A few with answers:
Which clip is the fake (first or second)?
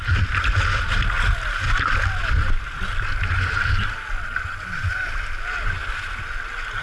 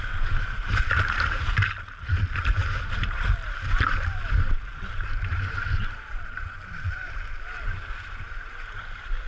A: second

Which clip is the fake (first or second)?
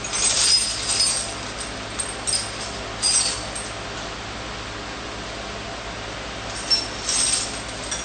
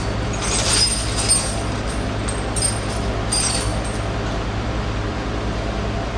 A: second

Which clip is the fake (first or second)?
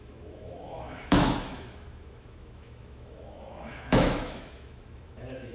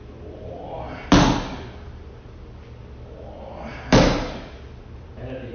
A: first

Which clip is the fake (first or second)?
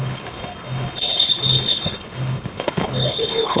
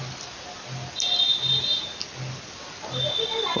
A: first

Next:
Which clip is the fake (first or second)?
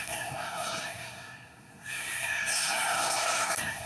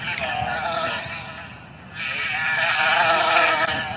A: first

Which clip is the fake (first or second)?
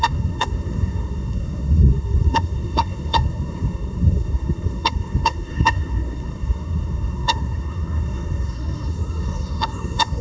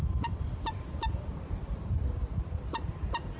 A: first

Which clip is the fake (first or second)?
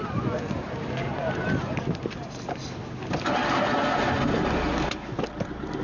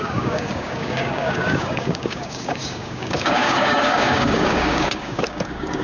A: second